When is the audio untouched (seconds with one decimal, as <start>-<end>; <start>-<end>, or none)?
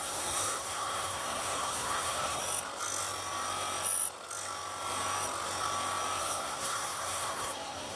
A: 2.4-6.2